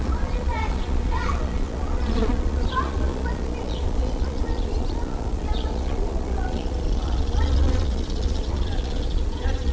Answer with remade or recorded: remade